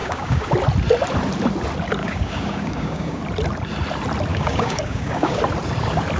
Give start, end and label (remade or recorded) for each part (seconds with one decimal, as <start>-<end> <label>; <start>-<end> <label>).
0.0-0.5 remade; 0.5-2.0 recorded; 2.0-3.2 remade; 3.2-4.3 recorded; 4.3-5.4 remade; 5.4-6.2 recorded